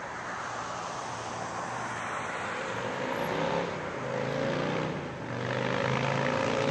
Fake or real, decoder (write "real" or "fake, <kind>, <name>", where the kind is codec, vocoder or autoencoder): real